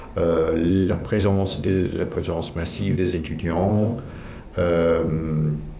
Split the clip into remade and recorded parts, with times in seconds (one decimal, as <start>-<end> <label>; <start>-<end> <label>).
0.0-0.7 recorded; 0.7-3.3 remade; 3.3-3.7 recorded; 3.7-4.4 remade; 4.4-5.8 recorded